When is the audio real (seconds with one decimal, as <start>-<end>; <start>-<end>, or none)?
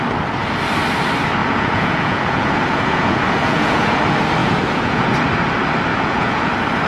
0.0-1.4; 4.0-4.4; 5.1-5.9; 6.5-6.9